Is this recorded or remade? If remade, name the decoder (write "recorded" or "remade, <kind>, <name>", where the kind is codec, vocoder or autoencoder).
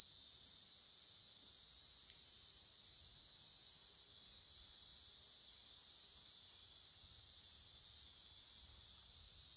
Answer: recorded